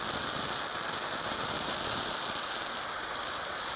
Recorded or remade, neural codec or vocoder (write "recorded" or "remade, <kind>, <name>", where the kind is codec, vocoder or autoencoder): recorded